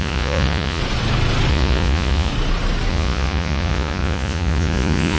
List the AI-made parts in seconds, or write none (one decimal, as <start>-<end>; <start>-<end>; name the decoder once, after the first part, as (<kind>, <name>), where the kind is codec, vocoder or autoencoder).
0.0-0.8 (vocoder, Vocos); 1.5-2.3; 2.9-5.2